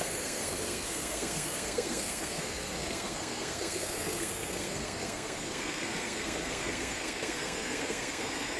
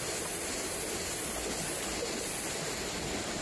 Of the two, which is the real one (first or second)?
second